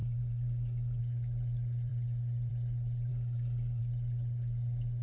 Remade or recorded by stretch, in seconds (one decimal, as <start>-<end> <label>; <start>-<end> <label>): 0.0-1.0 remade; 1.0-3.1 recorded; 3.1-3.8 remade; 3.8-5.0 recorded

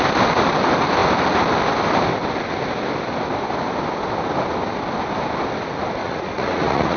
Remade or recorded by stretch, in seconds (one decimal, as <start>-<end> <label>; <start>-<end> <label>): 0.0-6.0 recorded; 6.0-7.0 remade